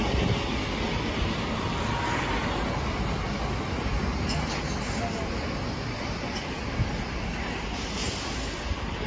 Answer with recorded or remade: recorded